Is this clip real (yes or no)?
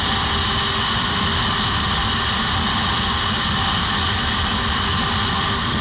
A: yes